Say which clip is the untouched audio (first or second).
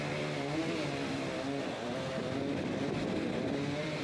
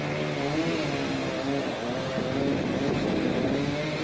second